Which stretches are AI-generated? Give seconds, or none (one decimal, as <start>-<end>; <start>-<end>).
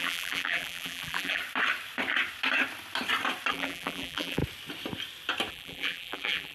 0.0-1.4; 3.5-4.4; 5.5-6.5